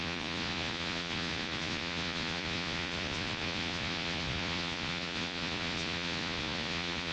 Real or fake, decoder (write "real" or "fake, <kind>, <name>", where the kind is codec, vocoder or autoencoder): fake, vocoder, Vocos